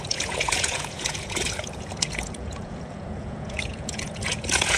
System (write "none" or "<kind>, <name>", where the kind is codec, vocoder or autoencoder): vocoder, Vocos